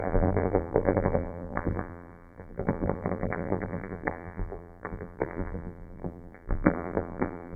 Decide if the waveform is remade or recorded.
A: remade